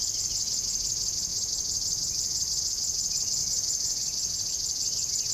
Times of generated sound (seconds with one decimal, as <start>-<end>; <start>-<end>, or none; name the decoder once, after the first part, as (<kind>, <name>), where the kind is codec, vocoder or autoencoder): 1.3-2.6 (vocoder, BigVGAN v2); 3.4-4.5